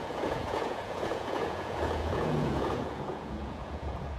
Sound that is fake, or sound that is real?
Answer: fake